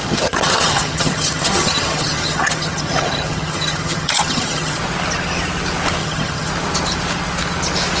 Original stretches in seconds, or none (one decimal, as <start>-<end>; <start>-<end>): 4.8-6.0; 6.5-8.0